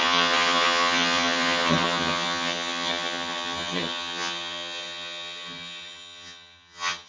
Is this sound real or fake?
fake